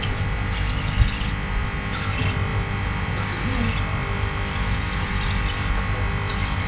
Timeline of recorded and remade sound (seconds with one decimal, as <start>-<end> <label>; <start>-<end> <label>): 0.0-6.7 recorded